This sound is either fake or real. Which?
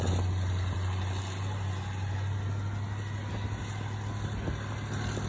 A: real